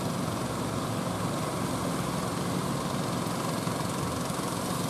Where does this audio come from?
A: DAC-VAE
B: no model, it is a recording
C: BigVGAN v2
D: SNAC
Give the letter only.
B